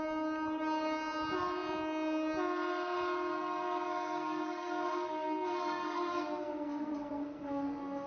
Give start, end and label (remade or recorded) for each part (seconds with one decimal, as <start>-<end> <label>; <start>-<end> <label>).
0.0-3.3 recorded; 3.3-8.1 remade